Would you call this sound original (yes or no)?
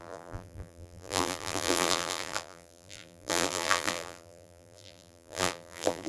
no